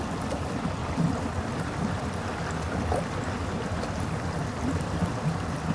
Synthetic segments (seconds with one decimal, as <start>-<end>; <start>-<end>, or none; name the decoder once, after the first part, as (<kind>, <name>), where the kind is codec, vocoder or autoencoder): 0.0-0.8 (vocoder, BigVGAN v2); 4.2-5.7